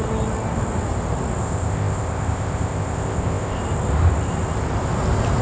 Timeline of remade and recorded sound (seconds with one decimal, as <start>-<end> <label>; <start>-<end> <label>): 0.0-1.4 recorded; 1.4-3.6 remade; 3.6-5.4 recorded